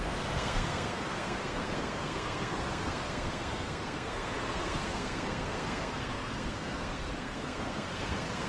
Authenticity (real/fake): fake